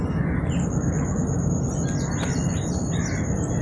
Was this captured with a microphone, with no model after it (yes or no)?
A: yes